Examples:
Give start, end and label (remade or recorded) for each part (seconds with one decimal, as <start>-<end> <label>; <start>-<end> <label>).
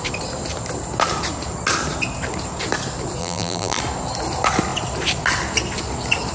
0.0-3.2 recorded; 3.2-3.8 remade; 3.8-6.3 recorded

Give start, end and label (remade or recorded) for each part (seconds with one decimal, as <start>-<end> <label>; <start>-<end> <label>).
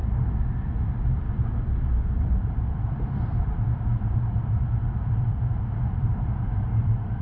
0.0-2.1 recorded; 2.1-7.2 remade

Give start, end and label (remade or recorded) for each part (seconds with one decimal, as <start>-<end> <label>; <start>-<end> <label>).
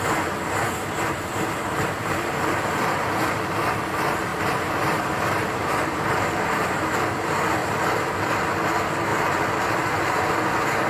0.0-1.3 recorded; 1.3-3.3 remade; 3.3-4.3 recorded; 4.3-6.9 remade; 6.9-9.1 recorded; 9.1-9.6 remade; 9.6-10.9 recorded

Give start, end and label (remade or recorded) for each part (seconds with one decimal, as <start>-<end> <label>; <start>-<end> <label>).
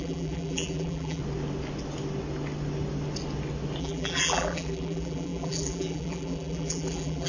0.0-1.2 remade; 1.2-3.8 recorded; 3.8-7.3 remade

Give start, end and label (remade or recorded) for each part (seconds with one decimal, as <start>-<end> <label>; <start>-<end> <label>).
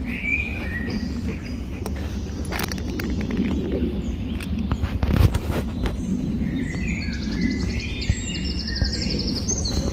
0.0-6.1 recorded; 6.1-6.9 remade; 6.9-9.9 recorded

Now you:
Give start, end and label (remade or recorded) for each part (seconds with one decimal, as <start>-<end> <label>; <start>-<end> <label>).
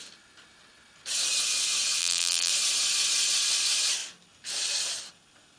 0.0-2.0 recorded; 2.0-2.5 remade; 2.5-5.6 recorded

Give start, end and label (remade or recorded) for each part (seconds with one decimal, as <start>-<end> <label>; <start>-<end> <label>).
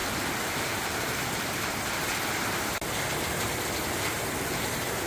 0.0-1.7 remade; 1.7-5.1 recorded